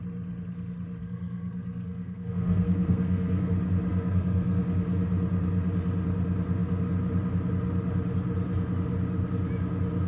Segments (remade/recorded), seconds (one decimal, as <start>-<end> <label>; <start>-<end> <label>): 0.0-1.0 recorded; 1.0-3.5 remade; 3.5-3.9 recorded; 3.9-4.6 remade; 4.6-10.1 recorded